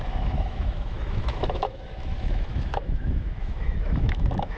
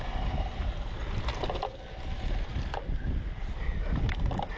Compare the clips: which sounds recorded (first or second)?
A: second